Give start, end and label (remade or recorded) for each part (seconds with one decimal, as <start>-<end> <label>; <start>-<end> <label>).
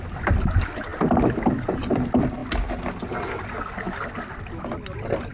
0.0-2.4 remade; 2.4-4.3 recorded; 4.3-5.3 remade